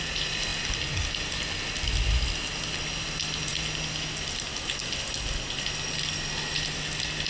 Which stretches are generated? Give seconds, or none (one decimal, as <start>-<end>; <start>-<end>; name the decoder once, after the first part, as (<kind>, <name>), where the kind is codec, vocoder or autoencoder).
none

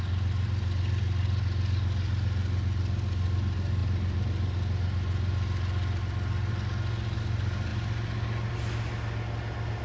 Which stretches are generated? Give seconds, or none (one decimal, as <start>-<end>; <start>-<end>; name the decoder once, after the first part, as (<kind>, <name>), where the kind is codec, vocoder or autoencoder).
none

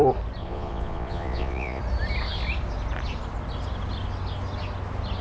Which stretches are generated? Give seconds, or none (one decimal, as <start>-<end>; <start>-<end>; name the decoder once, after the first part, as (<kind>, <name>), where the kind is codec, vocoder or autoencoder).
0.4-1.8 (vocoder, Vocos)

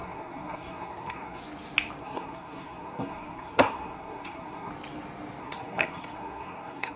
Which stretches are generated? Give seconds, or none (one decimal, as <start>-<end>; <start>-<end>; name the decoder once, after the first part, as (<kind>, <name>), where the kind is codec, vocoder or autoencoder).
0.0-1.4 (codec, SNAC); 2.0-4.7; 5.4-7.0

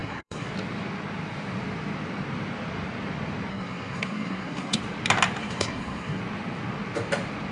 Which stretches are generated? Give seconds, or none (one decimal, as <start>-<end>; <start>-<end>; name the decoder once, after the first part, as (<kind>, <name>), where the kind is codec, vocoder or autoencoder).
0.0-0.5 (codec, SNAC); 3.5-4.8; 5.4-6.2